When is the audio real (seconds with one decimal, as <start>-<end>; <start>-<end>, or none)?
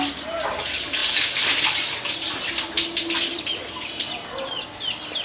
0.0-5.2